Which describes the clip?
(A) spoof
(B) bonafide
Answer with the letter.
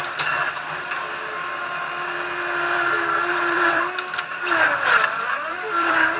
A